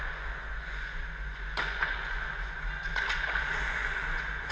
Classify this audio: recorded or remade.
remade